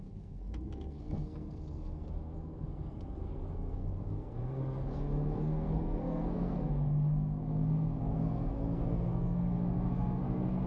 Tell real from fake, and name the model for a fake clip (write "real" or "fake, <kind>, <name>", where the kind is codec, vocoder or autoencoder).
fake, codec, SNAC